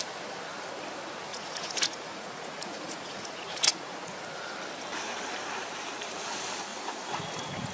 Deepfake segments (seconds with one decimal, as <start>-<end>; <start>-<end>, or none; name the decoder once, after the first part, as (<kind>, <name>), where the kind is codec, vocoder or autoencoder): 1.3-4.2 (vocoder, Vocos); 6.7-7.7